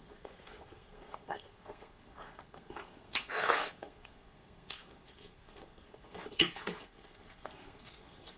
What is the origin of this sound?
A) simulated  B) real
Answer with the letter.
A